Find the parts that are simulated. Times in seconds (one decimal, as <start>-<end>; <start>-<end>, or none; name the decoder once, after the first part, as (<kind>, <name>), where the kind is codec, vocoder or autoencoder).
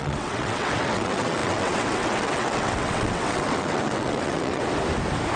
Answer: 0.0-4.6 (vocoder, WaveNeXt)